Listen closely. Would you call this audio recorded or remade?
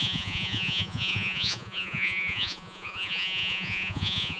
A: remade